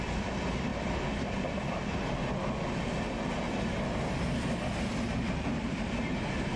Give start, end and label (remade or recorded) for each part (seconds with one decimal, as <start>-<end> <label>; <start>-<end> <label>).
0.0-6.6 recorded